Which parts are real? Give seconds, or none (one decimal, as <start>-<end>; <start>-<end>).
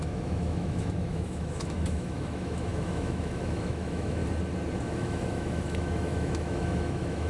4.2-4.8